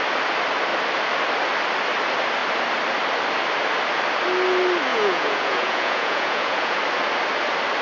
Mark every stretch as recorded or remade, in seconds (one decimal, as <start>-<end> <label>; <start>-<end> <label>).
0.0-4.9 recorded; 4.9-6.8 remade; 6.8-7.8 recorded